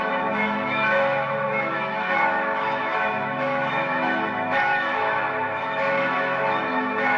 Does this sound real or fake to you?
fake